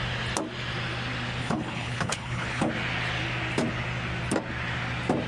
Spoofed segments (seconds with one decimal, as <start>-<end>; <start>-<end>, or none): 1.4-2.7